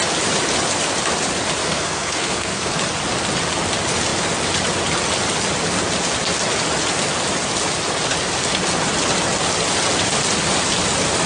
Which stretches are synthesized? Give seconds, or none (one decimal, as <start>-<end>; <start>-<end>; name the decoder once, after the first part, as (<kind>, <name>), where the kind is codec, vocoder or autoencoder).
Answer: 1.6-2.7 (codec, SNAC)

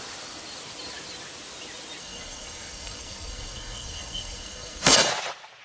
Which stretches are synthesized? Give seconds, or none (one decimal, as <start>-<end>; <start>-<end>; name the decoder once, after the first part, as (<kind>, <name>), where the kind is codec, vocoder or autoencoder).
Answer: 2.0-5.1 (codec, SNAC)

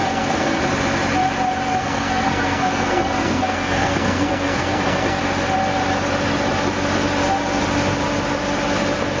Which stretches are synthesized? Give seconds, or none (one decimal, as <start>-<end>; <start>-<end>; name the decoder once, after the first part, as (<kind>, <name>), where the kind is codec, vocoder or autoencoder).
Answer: 0.0-0.6 (codec, SNAC); 1.7-5.2

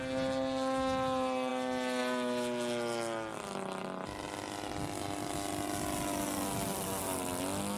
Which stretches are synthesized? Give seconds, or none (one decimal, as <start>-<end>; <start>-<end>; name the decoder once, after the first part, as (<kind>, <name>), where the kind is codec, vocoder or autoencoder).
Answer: none

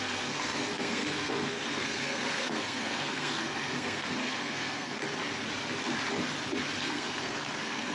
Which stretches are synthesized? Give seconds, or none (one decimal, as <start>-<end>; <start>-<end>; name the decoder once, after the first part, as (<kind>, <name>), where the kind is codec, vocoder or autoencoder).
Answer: 0.0-5.0 (codec, SNAC); 6.8-7.9

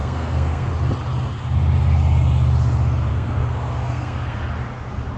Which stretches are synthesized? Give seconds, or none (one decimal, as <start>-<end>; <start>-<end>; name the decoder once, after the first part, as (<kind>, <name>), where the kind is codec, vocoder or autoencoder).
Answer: 0.0-0.7 (codec, SNAC); 3.1-4.4

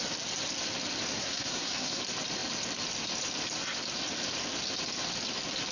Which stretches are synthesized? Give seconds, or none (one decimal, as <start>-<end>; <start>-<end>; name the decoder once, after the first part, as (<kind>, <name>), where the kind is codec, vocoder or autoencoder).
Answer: 1.1-2.0 (codec, SNAC)